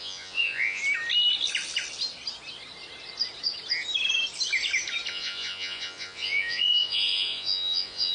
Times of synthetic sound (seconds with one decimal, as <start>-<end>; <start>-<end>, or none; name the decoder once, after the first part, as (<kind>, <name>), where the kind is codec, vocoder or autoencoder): 0.0-0.8 (vocoder, Vocos); 5.1-8.1